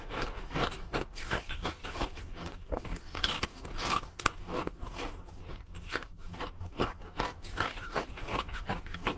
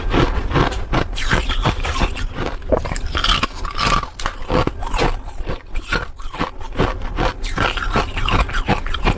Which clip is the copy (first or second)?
first